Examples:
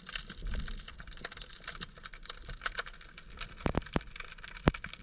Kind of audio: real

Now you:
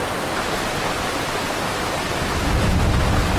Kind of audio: real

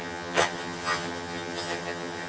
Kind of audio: fake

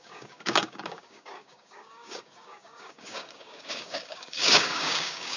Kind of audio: fake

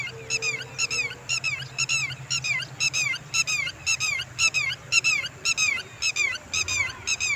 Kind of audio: real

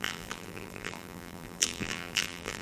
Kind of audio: fake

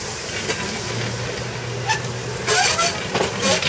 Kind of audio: real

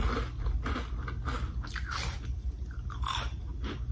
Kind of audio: real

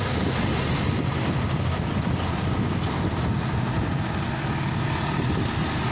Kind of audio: real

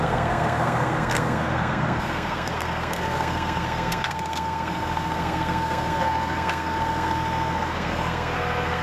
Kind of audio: fake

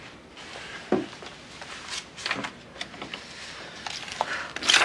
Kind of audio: real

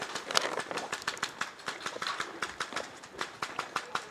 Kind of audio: fake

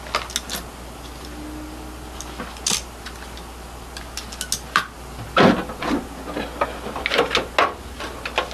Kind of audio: real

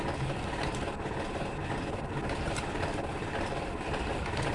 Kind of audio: real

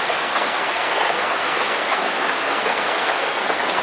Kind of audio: fake